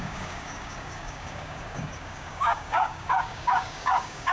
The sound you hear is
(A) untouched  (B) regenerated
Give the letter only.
B